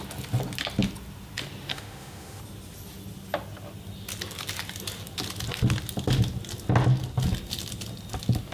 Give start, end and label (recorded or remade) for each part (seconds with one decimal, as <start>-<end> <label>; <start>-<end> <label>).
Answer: 0.0-1.7 recorded; 1.7-2.4 remade; 2.4-8.5 recorded